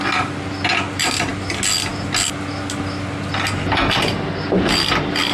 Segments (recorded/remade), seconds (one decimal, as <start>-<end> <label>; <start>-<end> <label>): 0.0-5.3 recorded